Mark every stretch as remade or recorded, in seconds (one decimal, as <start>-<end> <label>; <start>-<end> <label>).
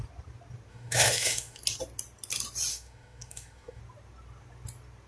0.0-0.7 recorded; 0.7-1.6 remade; 1.6-2.7 recorded; 2.7-3.8 remade; 3.8-5.1 recorded